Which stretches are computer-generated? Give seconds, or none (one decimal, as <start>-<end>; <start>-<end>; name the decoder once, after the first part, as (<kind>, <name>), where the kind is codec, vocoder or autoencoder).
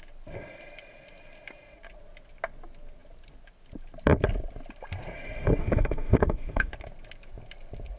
5.6-6.7 (autoencoder, DAC-VAE)